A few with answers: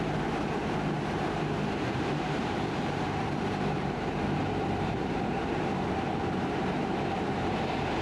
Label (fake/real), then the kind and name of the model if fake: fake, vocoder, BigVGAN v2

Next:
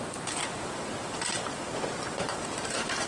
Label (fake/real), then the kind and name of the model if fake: fake, vocoder, BigVGAN v2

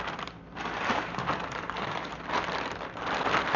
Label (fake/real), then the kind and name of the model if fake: real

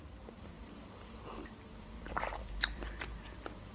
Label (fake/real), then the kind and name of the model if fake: fake, vocoder, BigVGAN v2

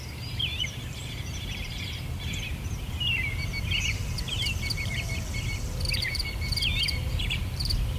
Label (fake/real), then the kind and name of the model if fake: fake, vocoder, BigVGAN v2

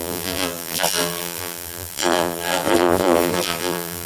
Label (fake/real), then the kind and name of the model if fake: fake, vocoder, BigVGAN v2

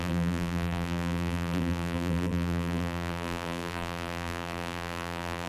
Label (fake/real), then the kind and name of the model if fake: fake, vocoder, BigVGAN v2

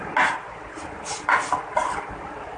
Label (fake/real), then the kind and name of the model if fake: real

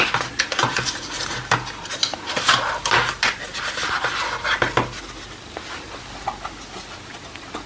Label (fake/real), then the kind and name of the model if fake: real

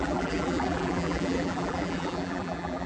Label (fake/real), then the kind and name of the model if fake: fake, vocoder, BigVGAN v2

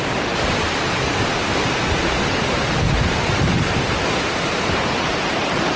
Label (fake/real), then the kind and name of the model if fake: fake, vocoder, BigVGAN v2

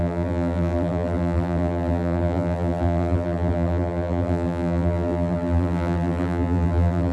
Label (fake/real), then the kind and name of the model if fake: fake, vocoder, BigVGAN v2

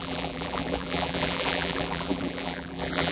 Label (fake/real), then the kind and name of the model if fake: fake, vocoder, BigVGAN v2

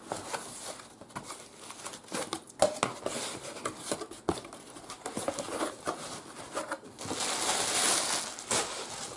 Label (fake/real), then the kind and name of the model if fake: real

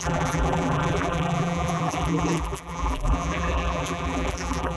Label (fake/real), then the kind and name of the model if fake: fake, vocoder, BigVGAN v2